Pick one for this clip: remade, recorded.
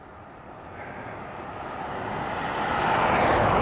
recorded